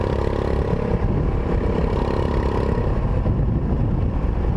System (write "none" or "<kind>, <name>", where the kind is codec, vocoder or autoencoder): none